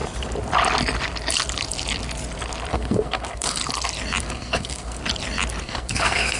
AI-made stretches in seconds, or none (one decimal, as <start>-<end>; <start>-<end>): 2.7-3.6; 4.2-5.0; 5.6-6.4